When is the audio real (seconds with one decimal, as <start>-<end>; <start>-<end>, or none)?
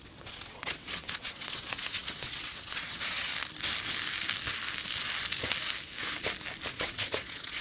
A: 3.3-6.7